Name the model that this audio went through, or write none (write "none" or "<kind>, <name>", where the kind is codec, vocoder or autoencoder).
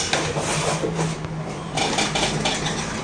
none